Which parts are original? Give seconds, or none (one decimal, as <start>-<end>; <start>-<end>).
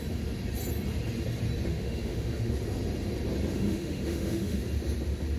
0.0-1.7; 2.5-3.5; 4.6-5.4